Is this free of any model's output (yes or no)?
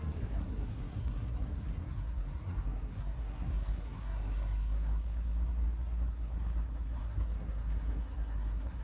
no